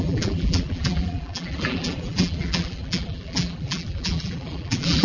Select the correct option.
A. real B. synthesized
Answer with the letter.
B